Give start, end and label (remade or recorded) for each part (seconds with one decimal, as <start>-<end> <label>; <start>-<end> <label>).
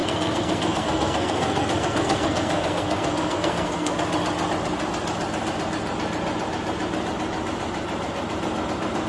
0.0-3.9 remade; 3.9-9.1 recorded